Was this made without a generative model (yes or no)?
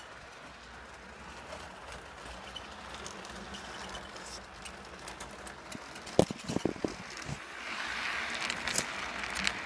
yes